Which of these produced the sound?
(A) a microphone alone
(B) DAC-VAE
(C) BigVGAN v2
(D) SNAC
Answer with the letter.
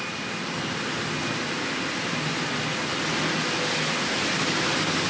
A